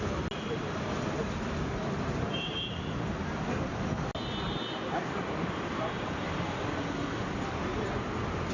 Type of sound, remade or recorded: recorded